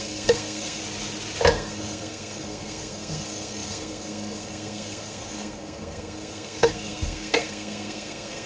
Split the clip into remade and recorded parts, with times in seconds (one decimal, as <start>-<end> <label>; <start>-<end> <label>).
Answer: 0.0-0.8 remade; 0.8-1.5 recorded; 1.5-8.5 remade